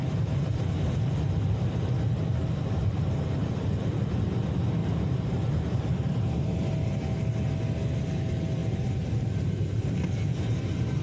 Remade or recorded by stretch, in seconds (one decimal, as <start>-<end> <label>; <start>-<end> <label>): 0.0-0.7 remade; 0.7-2.8 recorded; 2.8-4.2 remade; 4.2-4.8 recorded; 4.8-6.4 remade; 6.4-8.6 recorded; 8.6-10.6 remade; 10.6-11.0 recorded